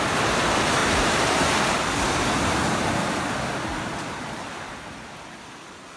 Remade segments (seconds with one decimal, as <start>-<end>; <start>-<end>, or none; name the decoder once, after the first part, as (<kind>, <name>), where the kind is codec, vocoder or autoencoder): 0.8-2.8 (vocoder, BigVGAN v2)